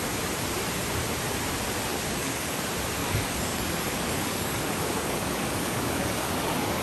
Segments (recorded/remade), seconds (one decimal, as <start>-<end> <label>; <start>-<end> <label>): 0.0-1.9 recorded; 1.9-2.6 remade; 2.6-3.0 recorded; 3.0-6.8 remade